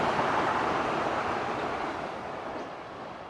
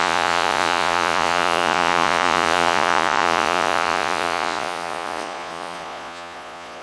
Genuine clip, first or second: first